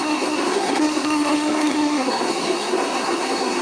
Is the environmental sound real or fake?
fake